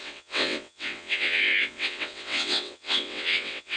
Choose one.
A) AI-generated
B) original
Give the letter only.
A